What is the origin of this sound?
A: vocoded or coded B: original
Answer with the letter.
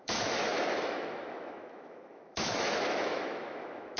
A